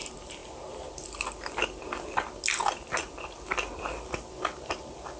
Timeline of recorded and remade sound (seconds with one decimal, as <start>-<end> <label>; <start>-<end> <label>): 0.0-5.2 recorded